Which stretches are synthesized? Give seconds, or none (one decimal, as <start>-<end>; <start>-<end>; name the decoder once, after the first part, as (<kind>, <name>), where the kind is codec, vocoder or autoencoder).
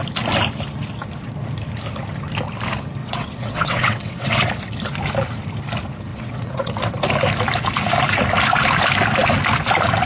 3.0-4.5 (vocoder, WaveNeXt); 6.1-6.7